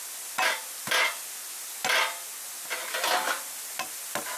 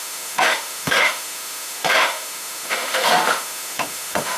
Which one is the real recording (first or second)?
first